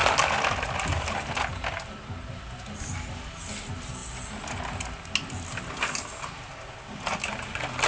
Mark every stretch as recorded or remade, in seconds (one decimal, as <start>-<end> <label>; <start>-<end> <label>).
0.0-7.9 recorded